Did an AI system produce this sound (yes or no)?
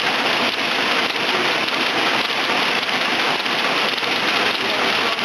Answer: no